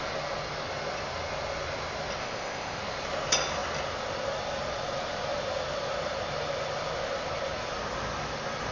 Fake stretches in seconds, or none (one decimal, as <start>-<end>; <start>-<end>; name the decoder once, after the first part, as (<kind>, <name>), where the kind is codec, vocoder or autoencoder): 2.2-2.8 (codec, ZipCodec)